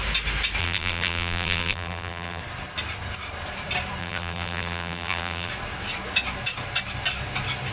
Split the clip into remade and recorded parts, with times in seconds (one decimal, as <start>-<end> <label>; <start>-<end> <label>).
0.0-0.6 recorded; 0.6-2.4 remade; 2.4-4.0 recorded; 4.0-5.5 remade; 5.5-7.7 recorded